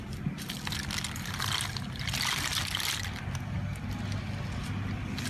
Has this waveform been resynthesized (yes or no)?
no